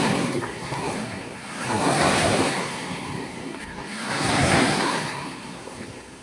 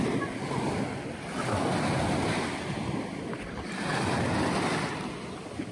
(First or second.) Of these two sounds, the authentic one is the second